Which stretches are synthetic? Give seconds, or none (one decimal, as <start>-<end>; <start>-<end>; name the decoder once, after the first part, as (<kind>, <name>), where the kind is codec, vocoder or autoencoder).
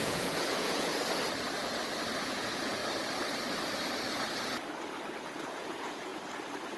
0.0-0.9 (vocoder, Vocos); 2.2-2.8; 5.2-6.1